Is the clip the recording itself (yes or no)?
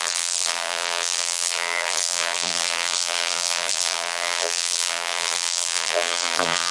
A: no